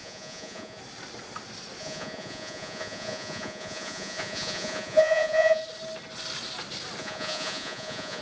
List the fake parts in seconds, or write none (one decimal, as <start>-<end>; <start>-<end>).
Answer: 0.0-0.8; 1.8-5.6; 7.0-8.2